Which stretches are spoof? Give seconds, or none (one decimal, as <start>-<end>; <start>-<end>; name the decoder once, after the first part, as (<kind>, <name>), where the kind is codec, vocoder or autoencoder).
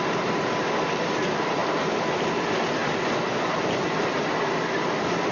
1.6-2.1 (vocoder, BigVGAN v2)